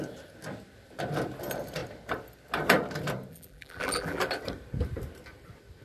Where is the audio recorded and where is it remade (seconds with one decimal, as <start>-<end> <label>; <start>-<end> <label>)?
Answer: 0.0-3.3 recorded; 3.3-4.2 remade; 4.2-5.8 recorded